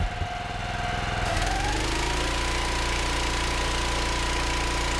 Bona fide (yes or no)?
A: yes